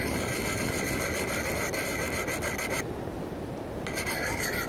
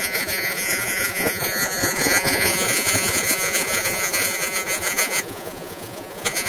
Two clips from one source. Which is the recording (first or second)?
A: first